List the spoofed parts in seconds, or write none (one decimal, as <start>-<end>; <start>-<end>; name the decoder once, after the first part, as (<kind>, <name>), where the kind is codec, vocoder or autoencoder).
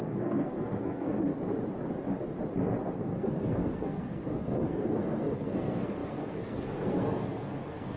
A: 0.0-1.3 (codec, SNAC); 2.9-8.0